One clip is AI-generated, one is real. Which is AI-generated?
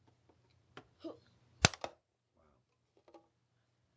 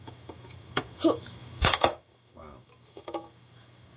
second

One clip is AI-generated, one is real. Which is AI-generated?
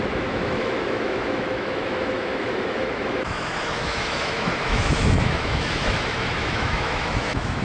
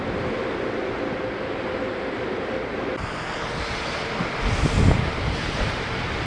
first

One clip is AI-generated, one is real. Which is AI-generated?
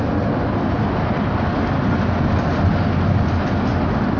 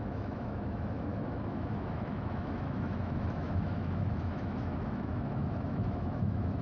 second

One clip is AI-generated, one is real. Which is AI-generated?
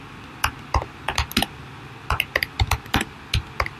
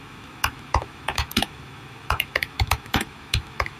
second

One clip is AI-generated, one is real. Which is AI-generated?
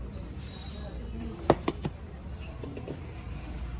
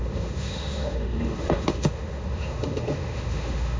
second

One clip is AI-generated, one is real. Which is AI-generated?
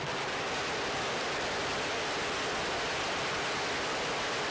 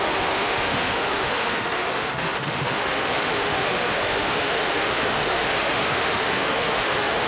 second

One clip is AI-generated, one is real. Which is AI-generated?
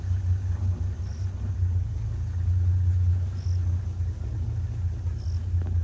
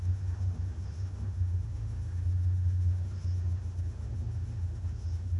second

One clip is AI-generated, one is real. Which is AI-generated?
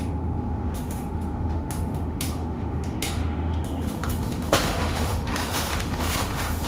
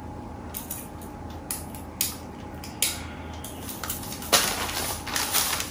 first